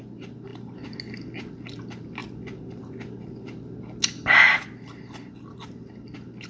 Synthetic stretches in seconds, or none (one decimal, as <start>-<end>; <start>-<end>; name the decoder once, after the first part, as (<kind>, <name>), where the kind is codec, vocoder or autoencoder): none